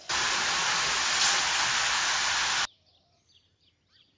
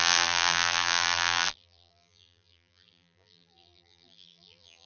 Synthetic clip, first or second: second